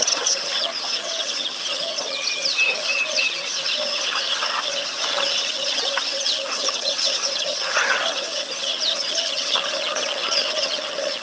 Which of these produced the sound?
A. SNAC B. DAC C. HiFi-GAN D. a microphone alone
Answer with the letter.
C